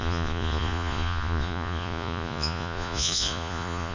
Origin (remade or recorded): remade